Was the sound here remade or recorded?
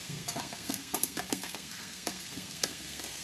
remade